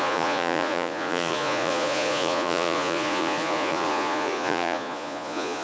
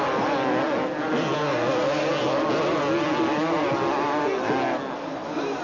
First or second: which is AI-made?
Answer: first